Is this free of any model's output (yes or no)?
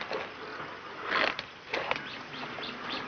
yes